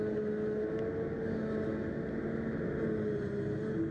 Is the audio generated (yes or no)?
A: no